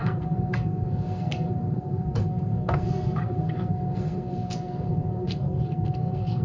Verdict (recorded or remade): remade